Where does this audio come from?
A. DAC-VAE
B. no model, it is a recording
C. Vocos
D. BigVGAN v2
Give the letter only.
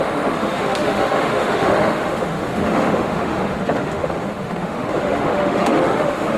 A